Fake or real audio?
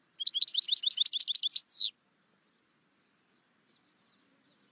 real